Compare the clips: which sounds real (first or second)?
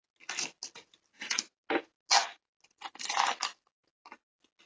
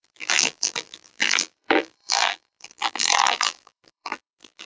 first